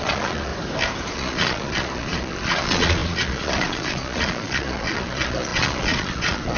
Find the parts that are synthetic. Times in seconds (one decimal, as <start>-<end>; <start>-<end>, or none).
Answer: 0.0-0.5; 1.1-6.6